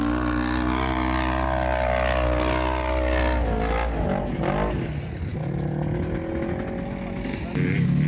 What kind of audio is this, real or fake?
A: real